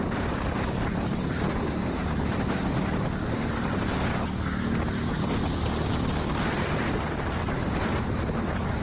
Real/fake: real